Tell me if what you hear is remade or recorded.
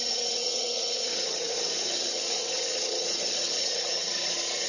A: remade